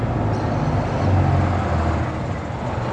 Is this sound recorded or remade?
recorded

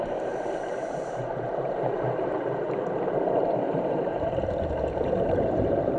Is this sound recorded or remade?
remade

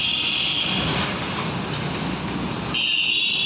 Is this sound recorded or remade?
recorded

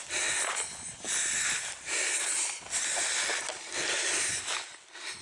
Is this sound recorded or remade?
recorded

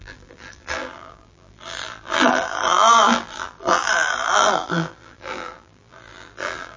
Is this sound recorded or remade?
remade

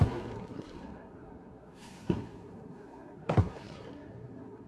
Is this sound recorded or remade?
remade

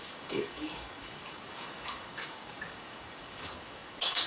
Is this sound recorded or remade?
remade